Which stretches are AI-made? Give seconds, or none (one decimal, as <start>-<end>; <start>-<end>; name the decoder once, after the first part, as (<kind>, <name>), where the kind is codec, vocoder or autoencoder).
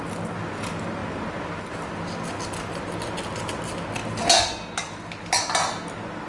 none